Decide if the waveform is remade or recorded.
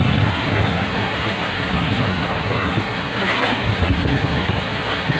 remade